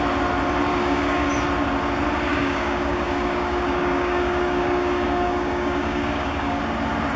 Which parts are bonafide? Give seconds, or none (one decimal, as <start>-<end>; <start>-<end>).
0.0-0.7; 1.3-2.3; 6.6-7.2